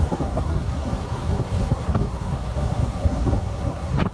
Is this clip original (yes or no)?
no